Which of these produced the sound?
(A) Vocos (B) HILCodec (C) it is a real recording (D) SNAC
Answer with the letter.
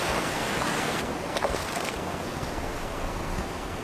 D